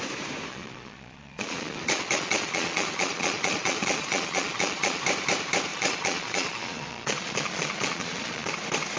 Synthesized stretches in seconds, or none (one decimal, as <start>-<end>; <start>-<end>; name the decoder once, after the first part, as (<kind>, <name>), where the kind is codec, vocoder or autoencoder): 0.5-5.0 (vocoder, Vocos); 5.7-8.5